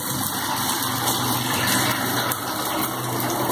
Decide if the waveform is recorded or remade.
remade